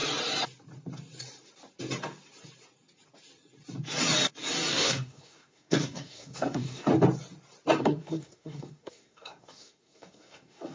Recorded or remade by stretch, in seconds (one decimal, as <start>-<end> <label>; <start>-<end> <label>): 0.0-4.7 recorded; 4.7-6.9 remade; 6.9-7.8 recorded; 7.8-10.7 remade